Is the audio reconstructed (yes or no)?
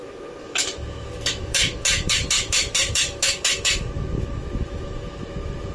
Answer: yes